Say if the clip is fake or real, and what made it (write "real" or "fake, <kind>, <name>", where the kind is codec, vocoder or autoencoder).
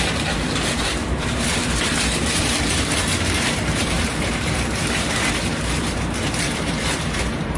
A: fake, vocoder, BigVGAN v2